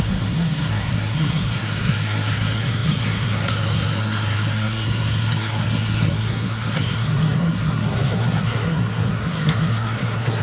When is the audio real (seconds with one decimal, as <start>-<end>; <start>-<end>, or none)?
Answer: none